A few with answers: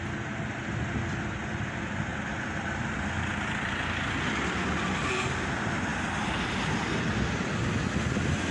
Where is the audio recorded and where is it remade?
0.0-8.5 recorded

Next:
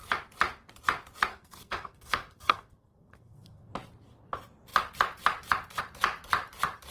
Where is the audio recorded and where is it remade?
0.0-1.3 recorded; 1.3-3.7 remade; 3.7-6.9 recorded

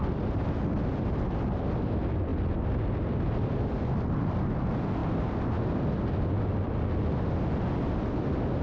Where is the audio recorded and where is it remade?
0.0-8.6 recorded

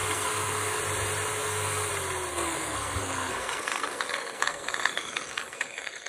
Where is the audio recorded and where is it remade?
0.0-0.8 remade; 0.8-1.3 recorded; 1.3-1.9 remade; 1.9-2.3 recorded; 2.3-6.1 remade

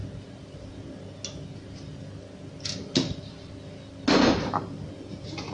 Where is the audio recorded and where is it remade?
0.0-5.5 recorded

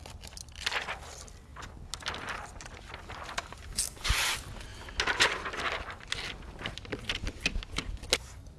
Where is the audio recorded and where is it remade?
0.0-8.6 recorded

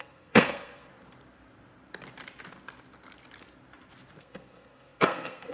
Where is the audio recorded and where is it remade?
0.0-0.9 remade; 0.9-4.2 recorded; 4.2-5.5 remade

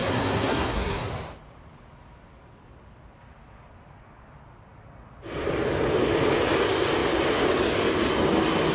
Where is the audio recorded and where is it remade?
0.0-1.1 remade; 1.1-8.7 recorded